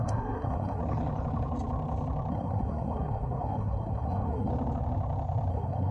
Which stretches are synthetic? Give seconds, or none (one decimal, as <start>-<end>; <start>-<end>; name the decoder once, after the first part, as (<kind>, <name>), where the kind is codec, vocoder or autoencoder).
0.0-0.8 (codec, SNAC); 2.3-4.5; 5.5-5.9